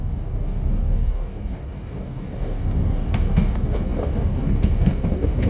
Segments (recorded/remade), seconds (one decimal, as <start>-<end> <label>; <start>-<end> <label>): 0.0-5.5 remade